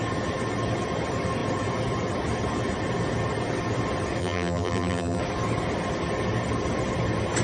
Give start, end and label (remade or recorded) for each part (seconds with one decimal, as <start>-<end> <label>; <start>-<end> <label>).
0.0-4.2 recorded; 4.2-5.2 remade; 5.2-7.4 recorded

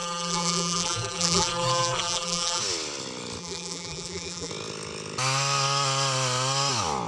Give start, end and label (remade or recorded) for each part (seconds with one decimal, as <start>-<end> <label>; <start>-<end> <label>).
0.0-2.6 remade; 2.6-3.4 recorded; 3.4-4.5 remade; 4.5-7.1 recorded

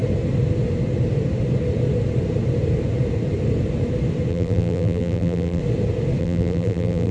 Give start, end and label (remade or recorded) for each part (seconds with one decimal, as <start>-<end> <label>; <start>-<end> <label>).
0.0-4.3 recorded; 4.3-5.6 remade; 5.6-6.2 recorded; 6.2-7.1 remade

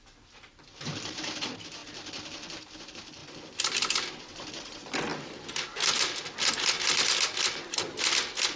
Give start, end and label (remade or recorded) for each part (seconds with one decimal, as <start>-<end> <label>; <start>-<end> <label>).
0.0-1.8 remade; 1.8-2.8 recorded; 2.8-3.2 remade; 3.2-4.2 recorded; 4.2-5.1 remade; 5.1-6.9 recorded; 6.9-8.6 remade

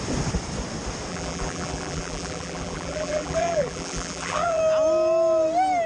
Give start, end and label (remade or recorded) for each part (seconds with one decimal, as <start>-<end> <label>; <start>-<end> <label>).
0.0-1.1 recorded; 1.1-4.6 remade; 4.6-5.9 recorded

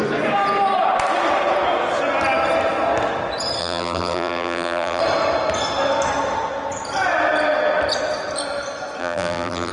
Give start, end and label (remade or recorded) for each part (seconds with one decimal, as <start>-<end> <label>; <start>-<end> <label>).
0.0-3.6 recorded; 3.6-5.0 remade; 5.0-9.0 recorded; 9.0-9.7 remade

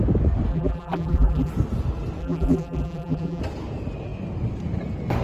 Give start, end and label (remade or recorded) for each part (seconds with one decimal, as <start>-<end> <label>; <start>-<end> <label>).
0.0-0.5 recorded; 0.5-1.5 remade; 1.5-2.2 recorded; 2.2-3.4 remade; 3.4-5.2 recorded

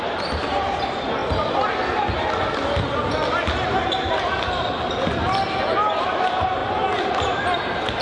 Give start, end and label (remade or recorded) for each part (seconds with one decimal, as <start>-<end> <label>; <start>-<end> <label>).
0.0-1.2 remade; 1.2-6.0 recorded; 6.0-6.6 remade; 6.6-7.1 recorded; 7.1-8.0 remade